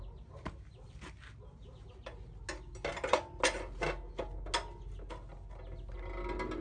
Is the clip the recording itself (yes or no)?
yes